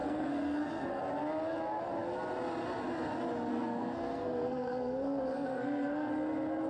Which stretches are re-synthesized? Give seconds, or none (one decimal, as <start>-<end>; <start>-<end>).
0.0-1.0; 3.5-6.1